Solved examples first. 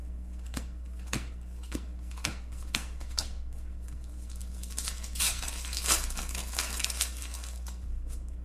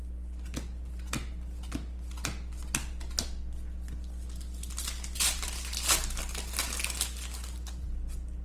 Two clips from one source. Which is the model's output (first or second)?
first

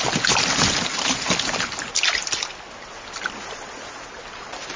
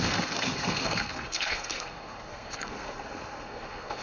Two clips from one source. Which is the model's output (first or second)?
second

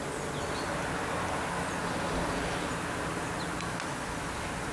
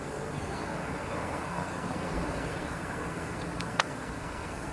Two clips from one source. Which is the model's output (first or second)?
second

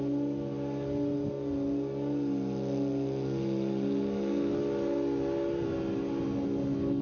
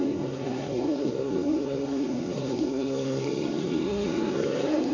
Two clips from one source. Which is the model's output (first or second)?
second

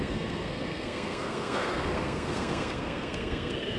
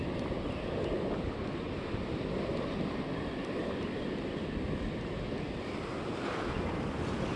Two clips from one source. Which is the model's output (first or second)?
first